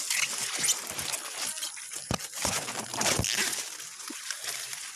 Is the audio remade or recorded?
recorded